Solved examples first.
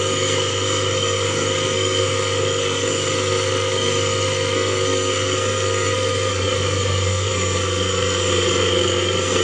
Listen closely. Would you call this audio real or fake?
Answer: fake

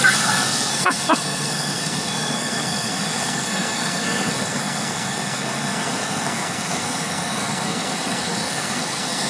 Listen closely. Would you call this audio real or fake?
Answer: fake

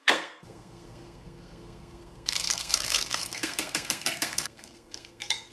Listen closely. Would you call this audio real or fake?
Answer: fake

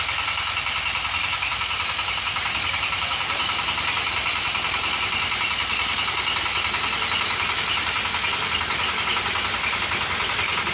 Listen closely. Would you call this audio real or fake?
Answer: real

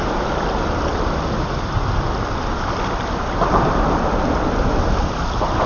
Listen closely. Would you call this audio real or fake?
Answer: fake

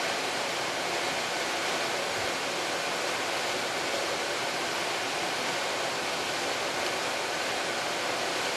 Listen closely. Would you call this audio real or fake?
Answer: real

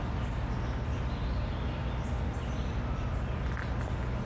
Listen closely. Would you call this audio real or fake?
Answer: real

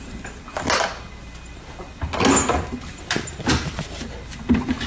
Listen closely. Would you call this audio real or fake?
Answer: real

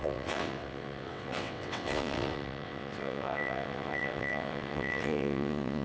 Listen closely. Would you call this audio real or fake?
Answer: fake